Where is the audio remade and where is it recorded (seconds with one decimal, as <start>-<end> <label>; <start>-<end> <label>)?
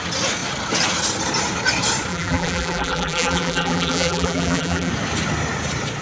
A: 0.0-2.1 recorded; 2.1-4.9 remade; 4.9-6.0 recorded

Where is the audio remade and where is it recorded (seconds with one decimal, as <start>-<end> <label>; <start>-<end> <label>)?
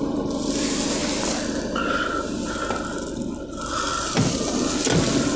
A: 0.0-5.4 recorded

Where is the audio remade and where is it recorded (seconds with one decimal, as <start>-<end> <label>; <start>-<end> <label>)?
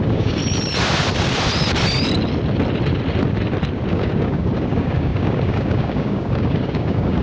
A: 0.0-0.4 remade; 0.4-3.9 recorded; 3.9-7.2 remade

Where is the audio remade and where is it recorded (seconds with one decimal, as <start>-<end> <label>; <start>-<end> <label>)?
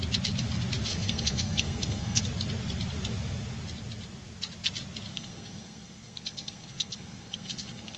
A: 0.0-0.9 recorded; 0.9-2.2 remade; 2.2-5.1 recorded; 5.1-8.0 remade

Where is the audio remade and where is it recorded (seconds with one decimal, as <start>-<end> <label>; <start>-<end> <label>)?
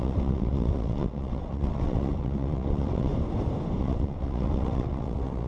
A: 0.0-3.1 remade; 3.1-3.8 recorded; 3.8-5.5 remade